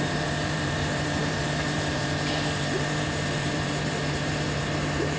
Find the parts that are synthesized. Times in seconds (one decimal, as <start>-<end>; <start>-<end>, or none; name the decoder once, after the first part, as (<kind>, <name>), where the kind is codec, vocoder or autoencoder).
0.0-5.2 (vocoder, BigVGAN v2)